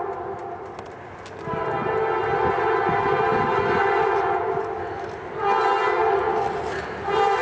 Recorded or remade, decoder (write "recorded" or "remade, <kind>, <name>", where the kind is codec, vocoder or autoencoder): recorded